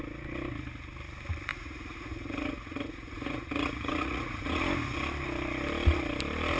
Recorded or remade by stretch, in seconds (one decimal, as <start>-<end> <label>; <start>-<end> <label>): 0.0-1.5 recorded; 1.5-4.6 remade; 4.6-6.6 recorded